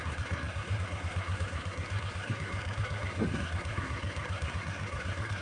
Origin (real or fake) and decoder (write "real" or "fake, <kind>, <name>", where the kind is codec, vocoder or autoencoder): fake, codec, SNAC